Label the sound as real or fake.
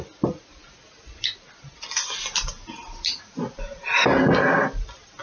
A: real